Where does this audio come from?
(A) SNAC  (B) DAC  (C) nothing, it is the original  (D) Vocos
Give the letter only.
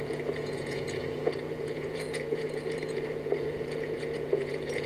D